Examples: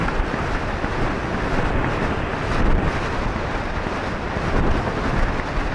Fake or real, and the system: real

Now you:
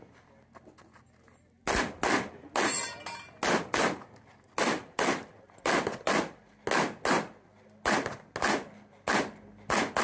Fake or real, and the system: real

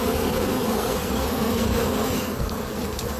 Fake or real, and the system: fake, codec, SNAC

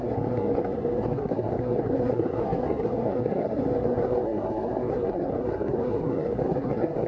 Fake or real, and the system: fake, codec, SNAC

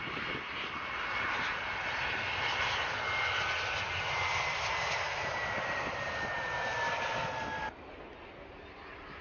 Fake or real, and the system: real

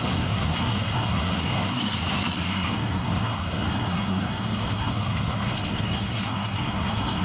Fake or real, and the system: fake, codec, SNAC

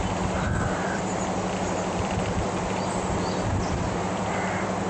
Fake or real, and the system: fake, vocoder, BigVGAN v2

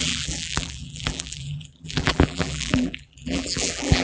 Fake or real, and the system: fake, vocoder, BigVGAN v2